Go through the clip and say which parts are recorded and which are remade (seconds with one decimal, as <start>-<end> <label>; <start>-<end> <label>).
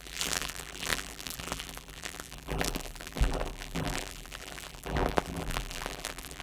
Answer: 0.0-6.4 remade